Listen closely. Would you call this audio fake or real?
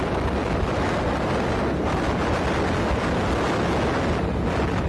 real